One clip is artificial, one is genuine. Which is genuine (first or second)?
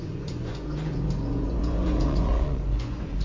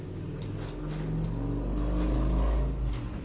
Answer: second